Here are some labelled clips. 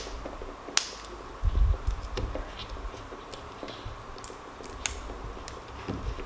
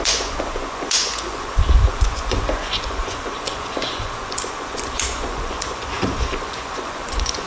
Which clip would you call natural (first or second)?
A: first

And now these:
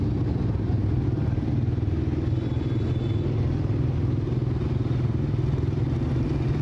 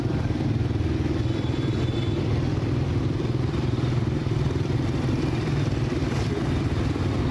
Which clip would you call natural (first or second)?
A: first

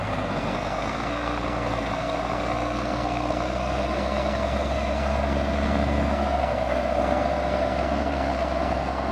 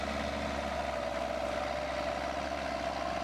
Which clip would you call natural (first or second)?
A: second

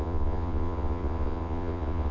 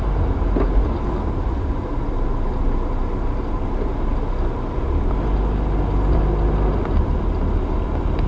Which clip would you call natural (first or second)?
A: second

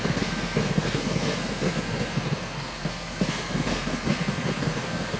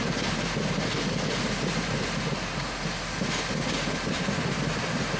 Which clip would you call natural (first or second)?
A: second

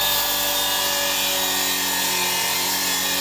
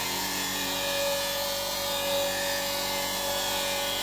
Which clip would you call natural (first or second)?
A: first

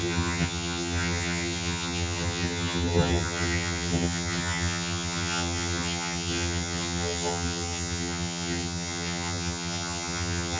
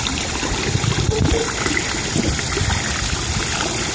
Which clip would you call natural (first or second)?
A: second